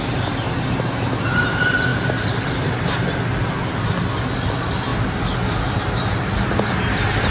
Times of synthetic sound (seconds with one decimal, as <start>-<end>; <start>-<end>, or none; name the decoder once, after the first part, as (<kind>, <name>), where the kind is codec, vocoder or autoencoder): none